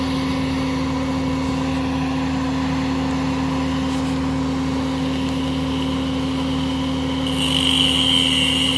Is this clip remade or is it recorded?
recorded